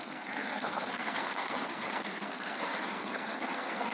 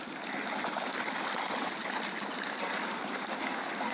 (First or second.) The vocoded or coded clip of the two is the first